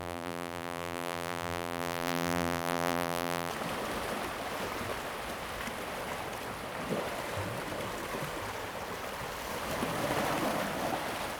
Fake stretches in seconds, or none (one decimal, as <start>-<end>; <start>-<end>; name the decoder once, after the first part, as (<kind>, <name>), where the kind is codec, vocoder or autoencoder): 0.0-3.5 (vocoder, BigVGAN v2)